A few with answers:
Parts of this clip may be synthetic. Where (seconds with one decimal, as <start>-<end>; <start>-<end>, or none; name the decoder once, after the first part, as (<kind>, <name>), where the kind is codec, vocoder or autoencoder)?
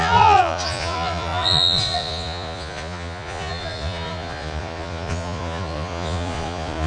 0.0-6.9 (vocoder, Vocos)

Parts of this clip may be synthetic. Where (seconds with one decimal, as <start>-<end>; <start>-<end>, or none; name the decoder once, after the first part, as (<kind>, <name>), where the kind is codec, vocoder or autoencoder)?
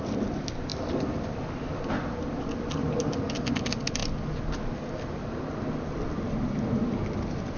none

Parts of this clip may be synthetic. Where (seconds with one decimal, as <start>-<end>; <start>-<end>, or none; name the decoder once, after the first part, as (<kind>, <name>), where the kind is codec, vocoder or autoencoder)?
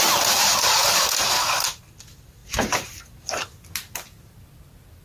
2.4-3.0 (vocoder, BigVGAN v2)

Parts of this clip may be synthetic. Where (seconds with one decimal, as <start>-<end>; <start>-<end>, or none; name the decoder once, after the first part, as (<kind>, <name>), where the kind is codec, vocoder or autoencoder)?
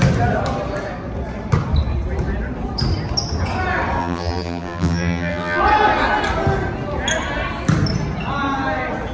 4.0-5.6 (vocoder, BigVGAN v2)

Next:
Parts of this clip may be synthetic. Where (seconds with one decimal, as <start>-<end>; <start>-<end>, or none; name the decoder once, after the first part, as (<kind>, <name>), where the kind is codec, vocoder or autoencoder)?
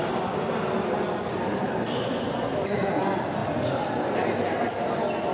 none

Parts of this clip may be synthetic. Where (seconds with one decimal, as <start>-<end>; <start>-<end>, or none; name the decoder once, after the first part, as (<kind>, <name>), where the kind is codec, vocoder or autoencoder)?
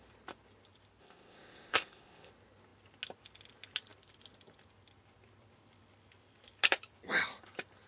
1.0-2.3 (codec, ZipCodec)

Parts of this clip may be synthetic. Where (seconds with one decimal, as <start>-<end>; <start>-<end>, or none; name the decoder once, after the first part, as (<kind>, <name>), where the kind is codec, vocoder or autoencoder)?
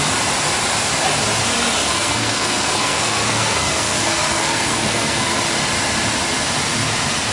1.8-5.4 (codec, SNAC)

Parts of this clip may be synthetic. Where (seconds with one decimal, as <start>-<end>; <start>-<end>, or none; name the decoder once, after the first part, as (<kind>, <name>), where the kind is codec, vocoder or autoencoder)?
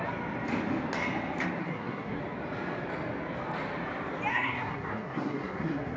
1.6-2.2 (codec, SNAC); 4.3-6.0